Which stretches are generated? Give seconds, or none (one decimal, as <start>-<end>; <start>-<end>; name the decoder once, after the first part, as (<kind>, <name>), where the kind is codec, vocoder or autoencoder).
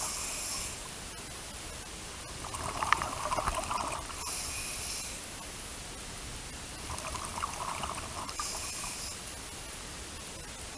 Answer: none